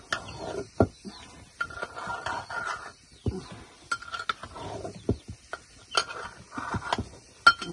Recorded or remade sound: recorded